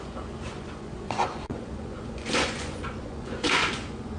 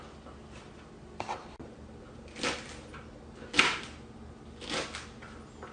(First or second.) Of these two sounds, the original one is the second